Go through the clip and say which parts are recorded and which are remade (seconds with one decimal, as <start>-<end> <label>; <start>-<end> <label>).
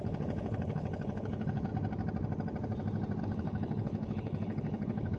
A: 0.0-1.7 remade; 1.7-3.2 recorded; 3.2-5.2 remade